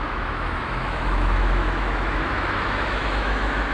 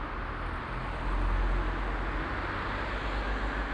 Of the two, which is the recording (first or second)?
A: second